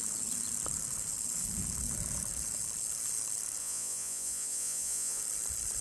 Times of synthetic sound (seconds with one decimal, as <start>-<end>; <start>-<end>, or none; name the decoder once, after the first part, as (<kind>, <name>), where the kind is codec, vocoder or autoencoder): 3.6-5.2 (vocoder, Vocos)